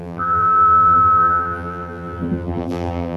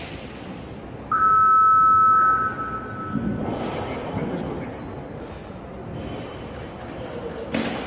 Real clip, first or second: second